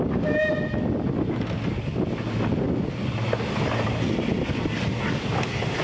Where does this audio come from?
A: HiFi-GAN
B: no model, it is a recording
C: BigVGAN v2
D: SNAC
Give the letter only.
B